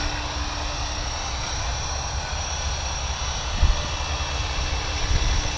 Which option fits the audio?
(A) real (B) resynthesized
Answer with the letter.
A